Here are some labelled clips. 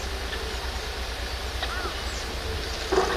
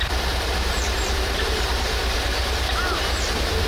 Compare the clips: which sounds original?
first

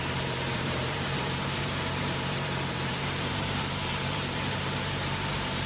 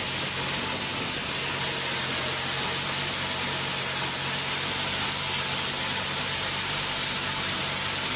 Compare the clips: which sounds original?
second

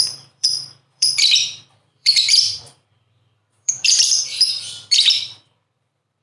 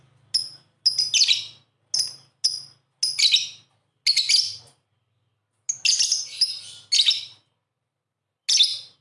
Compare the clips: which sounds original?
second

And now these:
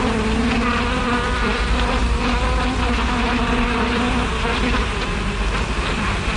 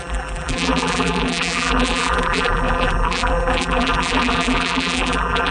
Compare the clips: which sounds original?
first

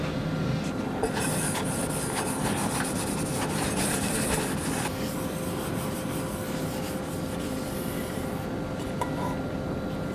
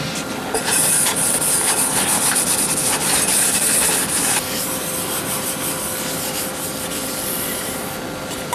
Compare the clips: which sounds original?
first